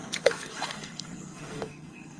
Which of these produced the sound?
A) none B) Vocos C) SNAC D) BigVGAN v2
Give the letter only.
C